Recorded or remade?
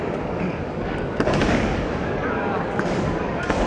remade